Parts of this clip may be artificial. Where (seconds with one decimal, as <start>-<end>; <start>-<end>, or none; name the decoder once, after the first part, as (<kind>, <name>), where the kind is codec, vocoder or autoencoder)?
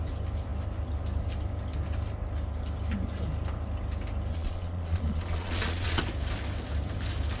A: 4.3-6.0 (vocoder, Vocos)